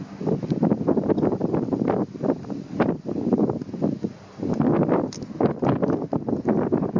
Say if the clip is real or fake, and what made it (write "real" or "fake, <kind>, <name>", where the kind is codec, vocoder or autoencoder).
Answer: real